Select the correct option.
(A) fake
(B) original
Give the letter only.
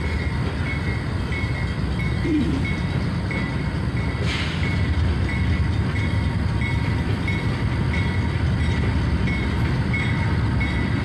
B